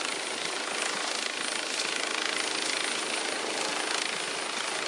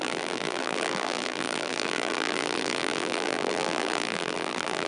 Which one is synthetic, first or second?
second